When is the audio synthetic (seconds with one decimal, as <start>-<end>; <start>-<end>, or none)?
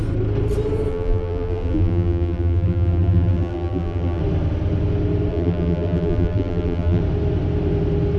0.9-4.2; 5.3-7.0